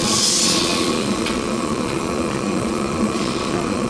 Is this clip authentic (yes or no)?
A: no